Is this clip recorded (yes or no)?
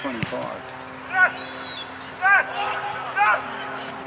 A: yes